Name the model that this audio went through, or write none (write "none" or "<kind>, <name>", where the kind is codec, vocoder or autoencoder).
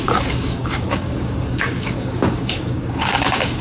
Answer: codec, DAC